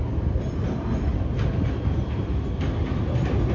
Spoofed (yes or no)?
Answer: no